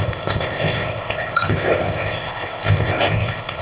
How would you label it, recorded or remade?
remade